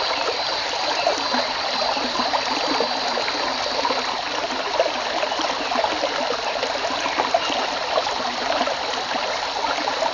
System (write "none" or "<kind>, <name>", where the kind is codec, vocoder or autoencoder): none